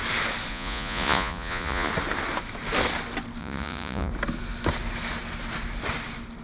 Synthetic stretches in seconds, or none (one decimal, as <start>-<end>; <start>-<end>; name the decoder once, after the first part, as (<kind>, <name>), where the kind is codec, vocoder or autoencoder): 0.5-1.9 (vocoder, Vocos); 3.4-4.1